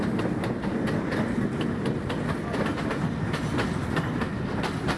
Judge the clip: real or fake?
real